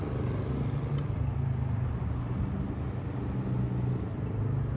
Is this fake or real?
real